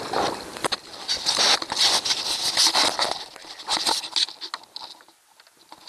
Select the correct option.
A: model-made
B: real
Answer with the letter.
B